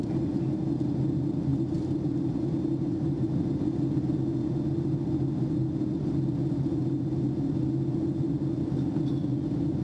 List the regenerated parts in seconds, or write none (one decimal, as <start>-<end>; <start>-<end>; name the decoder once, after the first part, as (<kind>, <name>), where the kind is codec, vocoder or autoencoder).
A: 0.0-1.0 (vocoder, BigVGAN v2); 1.5-3.6